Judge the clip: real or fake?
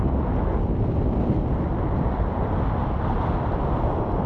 real